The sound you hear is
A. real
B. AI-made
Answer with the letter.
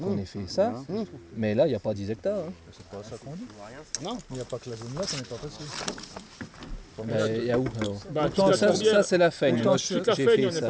A